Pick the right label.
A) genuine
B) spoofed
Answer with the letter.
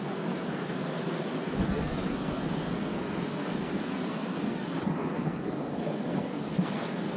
B